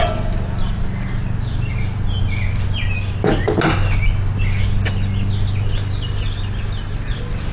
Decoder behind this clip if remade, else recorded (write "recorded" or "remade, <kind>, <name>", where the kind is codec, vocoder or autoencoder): recorded